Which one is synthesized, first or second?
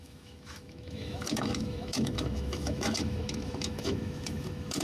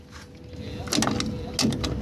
first